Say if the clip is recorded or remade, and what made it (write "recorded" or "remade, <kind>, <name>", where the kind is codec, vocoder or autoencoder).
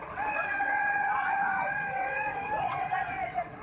remade, vocoder, WaveNeXt